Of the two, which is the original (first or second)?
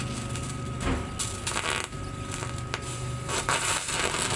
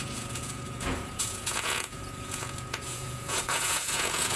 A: first